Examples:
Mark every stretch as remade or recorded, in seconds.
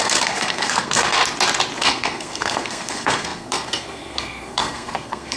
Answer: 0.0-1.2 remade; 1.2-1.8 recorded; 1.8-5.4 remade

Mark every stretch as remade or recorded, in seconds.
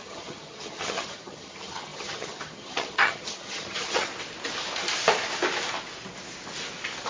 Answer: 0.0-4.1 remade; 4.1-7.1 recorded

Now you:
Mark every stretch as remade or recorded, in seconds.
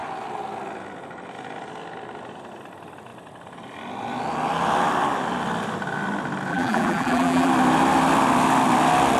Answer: 0.0-6.5 recorded; 6.5-7.5 remade; 7.5-9.2 recorded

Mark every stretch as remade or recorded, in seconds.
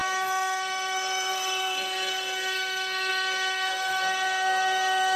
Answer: 0.0-5.2 remade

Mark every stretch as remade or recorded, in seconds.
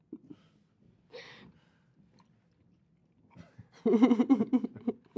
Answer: 0.0-5.2 recorded